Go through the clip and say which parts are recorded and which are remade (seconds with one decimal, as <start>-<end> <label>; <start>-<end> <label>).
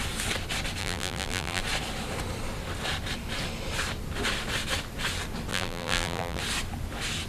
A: 0.0-0.8 recorded; 0.8-1.6 remade; 1.6-5.5 recorded; 5.5-6.4 remade; 6.4-7.3 recorded